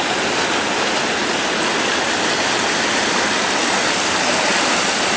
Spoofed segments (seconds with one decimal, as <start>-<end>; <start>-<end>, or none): none